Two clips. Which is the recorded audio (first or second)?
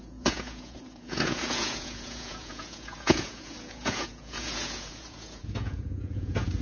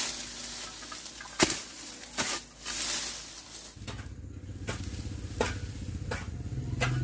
second